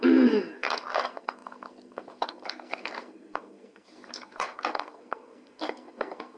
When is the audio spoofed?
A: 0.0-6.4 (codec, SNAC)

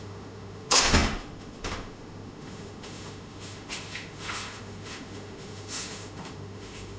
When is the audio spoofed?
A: 0.0-7.0 (autoencoder, DAC-VAE)

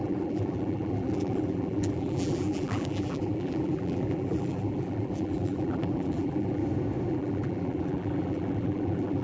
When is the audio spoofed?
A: 0.0-6.6 (vocoder, BigVGAN v2); 7.1-9.2

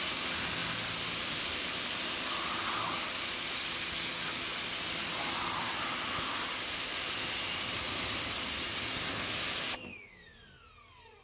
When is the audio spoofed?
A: none

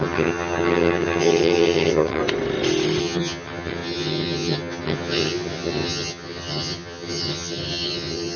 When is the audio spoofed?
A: 0.0-2.2 (vocoder, HiFi-GAN); 3.0-8.4

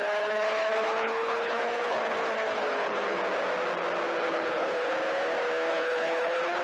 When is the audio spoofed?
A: 0.0-3.2 (codec, HILCodec); 4.2-4.9; 5.7-6.6

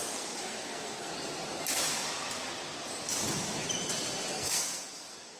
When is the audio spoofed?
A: 0.0-1.1 (codec, SNAC); 4.3-5.4

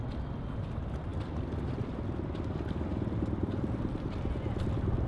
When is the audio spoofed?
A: none